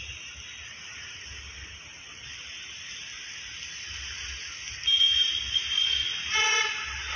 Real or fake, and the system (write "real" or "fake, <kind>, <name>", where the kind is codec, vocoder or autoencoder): real